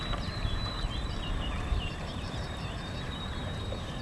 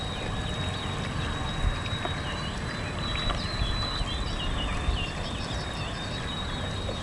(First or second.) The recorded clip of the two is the second